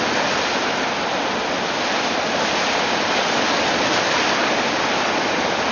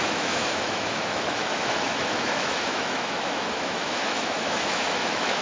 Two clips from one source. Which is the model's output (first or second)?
second